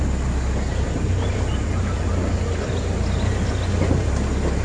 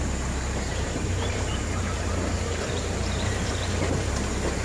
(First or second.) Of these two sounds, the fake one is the second